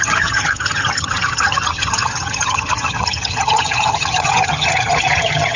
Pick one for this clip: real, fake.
fake